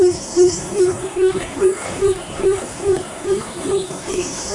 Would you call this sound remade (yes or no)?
yes